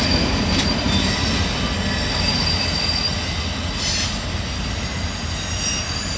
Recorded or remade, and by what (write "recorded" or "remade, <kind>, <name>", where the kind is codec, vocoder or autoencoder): recorded